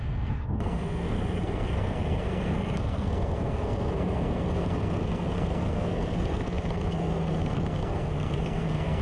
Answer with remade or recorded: remade